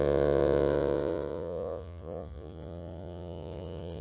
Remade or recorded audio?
remade